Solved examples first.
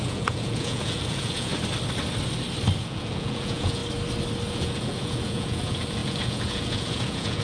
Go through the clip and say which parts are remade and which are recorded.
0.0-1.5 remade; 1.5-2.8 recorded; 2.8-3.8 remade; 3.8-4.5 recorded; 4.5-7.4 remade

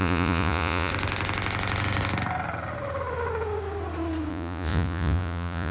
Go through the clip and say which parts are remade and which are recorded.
0.0-0.9 remade; 0.9-4.3 recorded; 4.3-5.7 remade